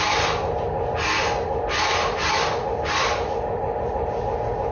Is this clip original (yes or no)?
yes